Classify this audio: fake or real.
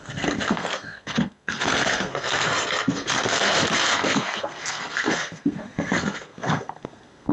fake